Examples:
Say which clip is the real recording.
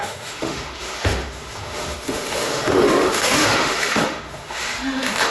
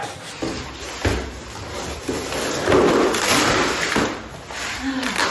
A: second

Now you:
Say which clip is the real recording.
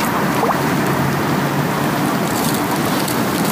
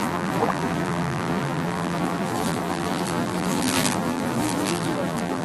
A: first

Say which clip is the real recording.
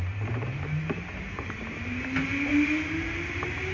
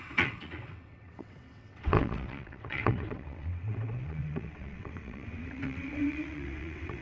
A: first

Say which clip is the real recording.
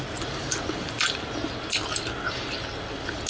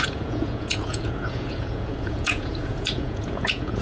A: first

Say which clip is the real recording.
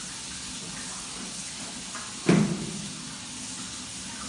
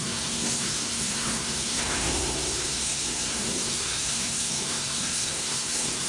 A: first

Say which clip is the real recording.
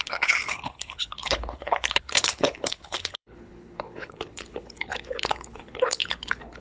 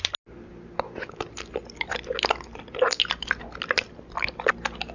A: second